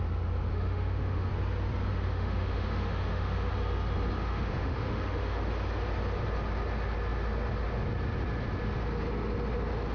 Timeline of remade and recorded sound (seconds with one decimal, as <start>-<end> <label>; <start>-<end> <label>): 0.0-0.5 recorded; 0.5-1.3 remade; 1.3-1.9 recorded; 1.9-3.5 remade; 3.5-4.2 recorded; 4.2-5.5 remade; 5.5-9.9 recorded